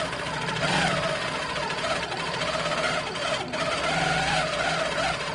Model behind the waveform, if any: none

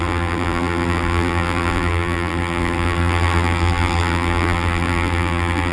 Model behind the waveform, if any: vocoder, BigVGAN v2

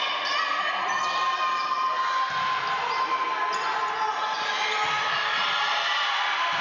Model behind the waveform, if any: none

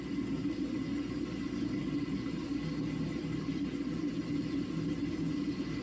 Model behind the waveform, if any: none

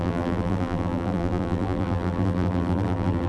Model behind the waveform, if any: vocoder, BigVGAN v2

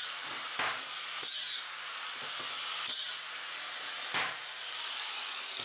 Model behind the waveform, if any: vocoder, BigVGAN v2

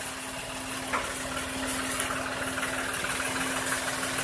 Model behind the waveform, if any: none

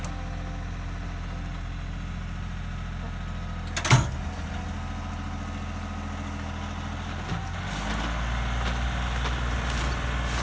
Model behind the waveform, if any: none